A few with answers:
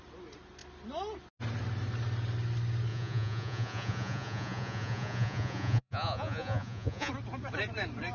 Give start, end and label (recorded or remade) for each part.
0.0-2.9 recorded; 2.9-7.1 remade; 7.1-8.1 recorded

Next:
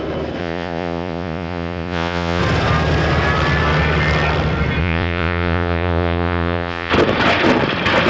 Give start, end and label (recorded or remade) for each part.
0.0-0.4 recorded; 0.4-2.4 remade; 2.4-4.8 recorded; 4.8-6.9 remade; 6.9-8.1 recorded

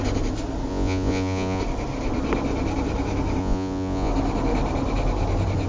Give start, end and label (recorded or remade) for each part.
0.0-0.7 recorded; 0.7-1.6 remade; 1.6-3.4 recorded; 3.4-4.1 remade; 4.1-5.7 recorded

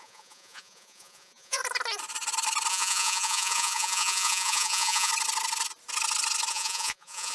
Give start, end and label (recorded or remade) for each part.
0.0-1.6 remade; 1.6-2.7 recorded; 2.7-5.1 remade; 5.1-6.5 recorded; 6.5-7.3 remade

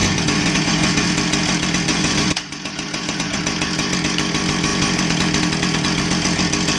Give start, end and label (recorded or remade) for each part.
0.0-1.1 remade; 1.1-1.9 recorded; 1.9-3.4 remade; 3.4-6.8 recorded

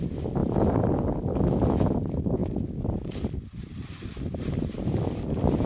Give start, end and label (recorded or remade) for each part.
0.0-5.7 recorded

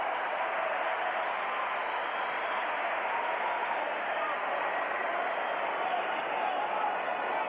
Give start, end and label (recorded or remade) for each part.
0.0-7.5 recorded

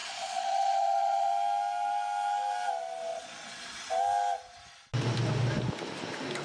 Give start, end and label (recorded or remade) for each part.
0.0-1.3 remade; 1.3-3.1 recorded; 3.1-3.8 remade; 3.8-6.4 recorded